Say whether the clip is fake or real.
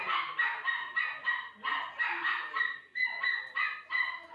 real